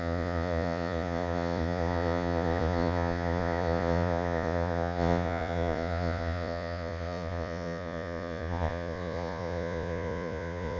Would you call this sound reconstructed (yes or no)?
yes